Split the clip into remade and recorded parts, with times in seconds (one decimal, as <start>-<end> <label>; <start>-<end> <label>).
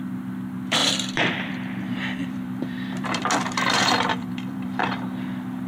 0.0-0.8 recorded; 0.8-1.5 remade; 1.5-2.2 recorded; 2.2-4.8 remade; 4.8-5.7 recorded